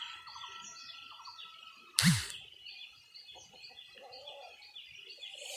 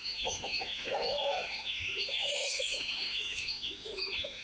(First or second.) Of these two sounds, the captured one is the first